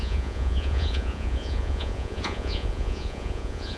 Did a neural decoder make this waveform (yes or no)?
yes